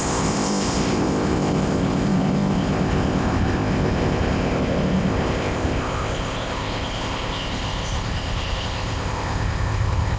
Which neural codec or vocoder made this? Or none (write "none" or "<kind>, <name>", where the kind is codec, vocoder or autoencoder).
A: codec, ZipCodec